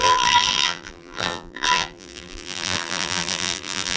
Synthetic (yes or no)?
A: yes